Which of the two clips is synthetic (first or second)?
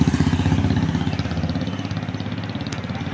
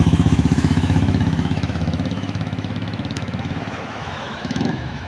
second